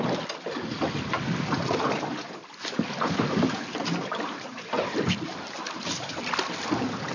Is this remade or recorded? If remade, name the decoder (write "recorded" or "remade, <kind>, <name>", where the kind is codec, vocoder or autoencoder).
recorded